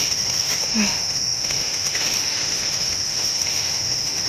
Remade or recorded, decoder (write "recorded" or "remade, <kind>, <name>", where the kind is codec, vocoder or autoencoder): remade, autoencoder, DAC-VAE